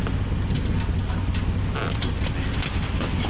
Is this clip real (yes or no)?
yes